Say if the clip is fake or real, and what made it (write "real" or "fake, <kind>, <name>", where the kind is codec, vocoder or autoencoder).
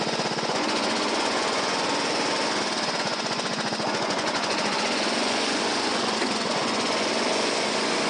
fake, vocoder, Vocos